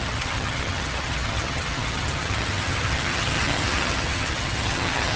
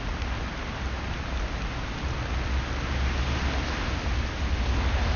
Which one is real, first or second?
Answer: second